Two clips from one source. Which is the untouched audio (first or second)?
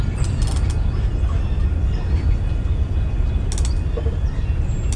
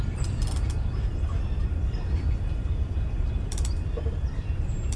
first